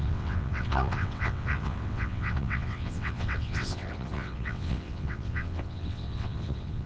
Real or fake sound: fake